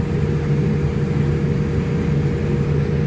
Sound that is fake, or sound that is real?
real